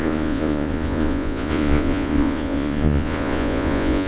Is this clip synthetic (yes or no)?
yes